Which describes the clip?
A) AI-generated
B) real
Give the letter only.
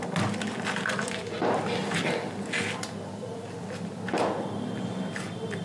B